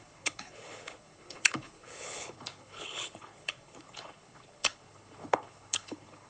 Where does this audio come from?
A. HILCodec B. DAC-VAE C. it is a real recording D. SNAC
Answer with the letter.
A